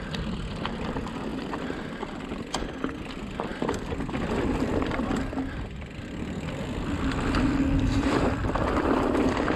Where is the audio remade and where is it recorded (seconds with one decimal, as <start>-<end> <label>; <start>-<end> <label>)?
0.0-1.3 recorded; 1.3-1.8 remade; 1.8-3.5 recorded; 3.5-8.6 remade; 8.6-9.6 recorded